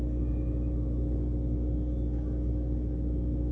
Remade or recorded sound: recorded